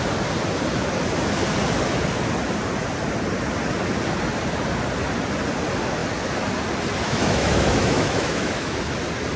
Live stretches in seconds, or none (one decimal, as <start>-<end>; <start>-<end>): 0.0-7.0; 8.8-9.4